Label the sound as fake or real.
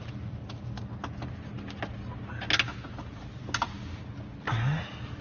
real